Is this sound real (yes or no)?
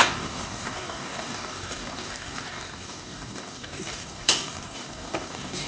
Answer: no